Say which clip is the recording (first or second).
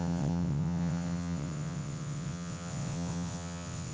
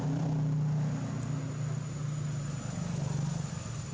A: second